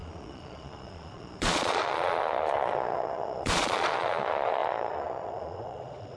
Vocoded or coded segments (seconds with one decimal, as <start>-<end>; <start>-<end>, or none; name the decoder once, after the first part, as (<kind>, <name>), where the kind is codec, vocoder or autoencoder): 0.0-6.2 (vocoder, Vocos)